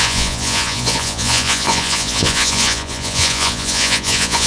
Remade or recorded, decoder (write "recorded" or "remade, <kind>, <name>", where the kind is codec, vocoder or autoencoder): remade, vocoder, Vocos